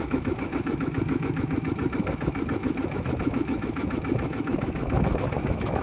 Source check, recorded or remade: remade